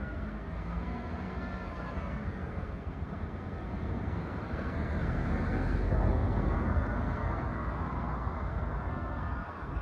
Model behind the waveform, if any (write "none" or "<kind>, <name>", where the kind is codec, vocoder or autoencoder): codec, SNAC